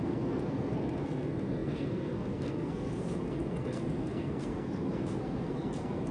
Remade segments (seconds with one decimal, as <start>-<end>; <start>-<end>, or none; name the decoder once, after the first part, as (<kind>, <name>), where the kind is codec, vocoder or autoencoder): 0.0-6.1 (codec, SNAC)